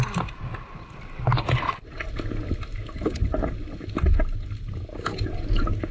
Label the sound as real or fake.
real